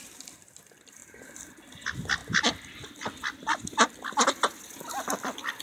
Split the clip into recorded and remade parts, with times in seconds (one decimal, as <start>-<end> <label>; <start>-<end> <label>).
0.0-1.0 recorded; 1.0-1.5 remade; 1.5-5.6 recorded